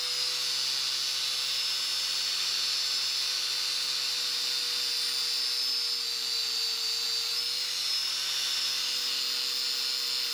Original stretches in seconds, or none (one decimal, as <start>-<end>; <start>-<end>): 0.0-10.3